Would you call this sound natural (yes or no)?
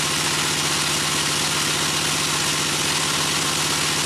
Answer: yes